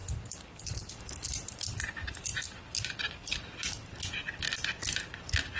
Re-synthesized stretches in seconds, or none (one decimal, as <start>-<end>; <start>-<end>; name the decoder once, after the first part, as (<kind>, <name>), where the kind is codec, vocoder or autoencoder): 1.5-2.3 (vocoder, BigVGAN v2); 3.0-3.6